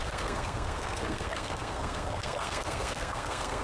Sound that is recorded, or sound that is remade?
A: remade